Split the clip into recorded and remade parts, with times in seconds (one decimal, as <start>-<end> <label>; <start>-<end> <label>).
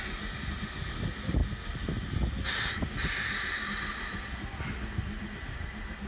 0.0-6.1 recorded